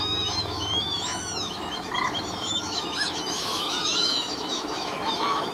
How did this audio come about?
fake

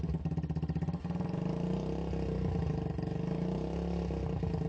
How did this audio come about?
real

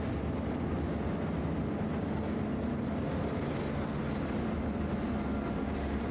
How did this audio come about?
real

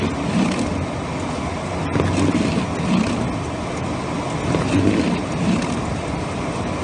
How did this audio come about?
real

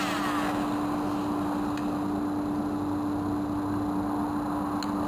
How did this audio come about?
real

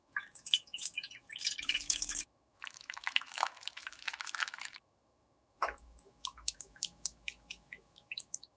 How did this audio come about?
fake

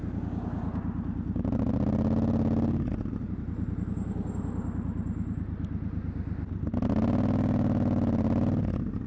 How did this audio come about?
real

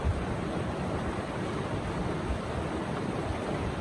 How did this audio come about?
real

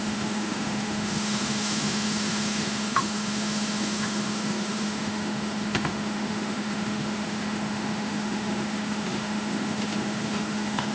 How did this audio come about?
fake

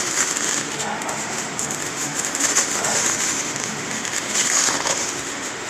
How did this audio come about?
fake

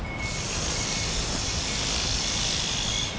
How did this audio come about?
real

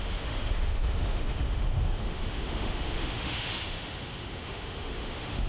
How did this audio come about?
fake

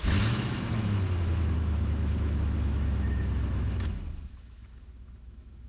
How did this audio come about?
fake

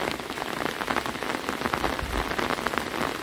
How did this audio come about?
real